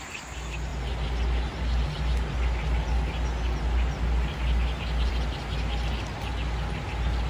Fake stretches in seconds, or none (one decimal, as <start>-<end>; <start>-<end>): none